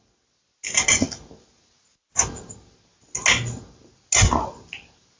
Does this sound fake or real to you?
real